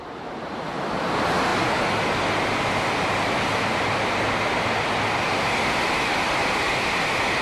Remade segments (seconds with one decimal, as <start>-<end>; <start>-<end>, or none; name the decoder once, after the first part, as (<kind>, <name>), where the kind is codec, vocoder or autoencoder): none